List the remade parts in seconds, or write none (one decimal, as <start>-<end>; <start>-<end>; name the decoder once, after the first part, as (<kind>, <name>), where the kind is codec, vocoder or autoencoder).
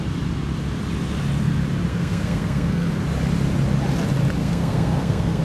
1.9-2.9 (codec, SNAC); 4.4-5.4